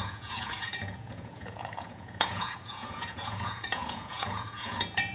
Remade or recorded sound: remade